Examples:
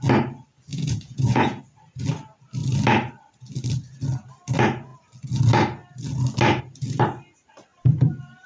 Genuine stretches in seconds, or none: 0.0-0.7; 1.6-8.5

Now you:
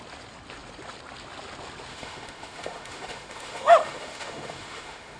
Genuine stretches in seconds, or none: 0.0-1.9

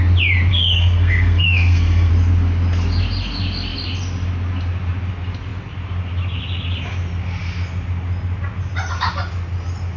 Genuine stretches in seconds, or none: 0.0-0.5; 2.1-10.0

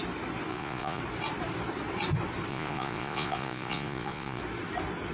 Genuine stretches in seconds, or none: 0.0-0.5; 1.0-2.5; 4.4-5.1

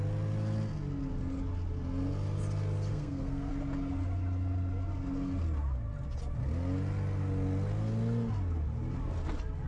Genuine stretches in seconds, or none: 0.0-2.9; 3.5-9.7

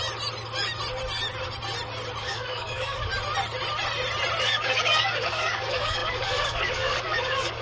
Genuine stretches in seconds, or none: 0.0-2.2; 3.1-4.4

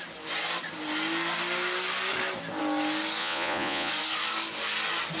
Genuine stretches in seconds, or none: 0.0-3.2; 3.9-5.2

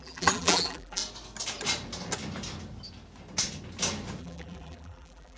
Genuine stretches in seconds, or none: 1.0-4.2